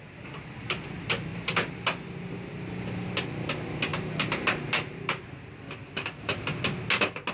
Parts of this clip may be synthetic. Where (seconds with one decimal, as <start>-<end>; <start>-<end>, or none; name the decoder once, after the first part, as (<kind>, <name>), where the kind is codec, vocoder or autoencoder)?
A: 3.9-5.3 (vocoder, BigVGAN v2); 5.8-6.6